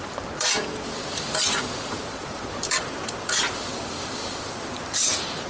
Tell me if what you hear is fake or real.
fake